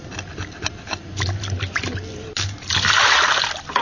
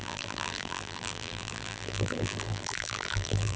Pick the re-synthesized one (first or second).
second